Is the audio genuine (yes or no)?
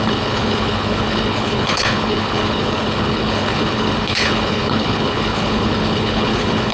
no